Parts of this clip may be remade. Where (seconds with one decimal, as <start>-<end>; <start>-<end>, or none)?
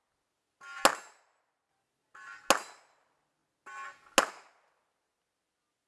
none